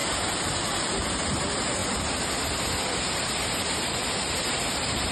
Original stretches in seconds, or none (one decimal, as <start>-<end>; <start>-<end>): 0.0-0.8; 1.8-2.3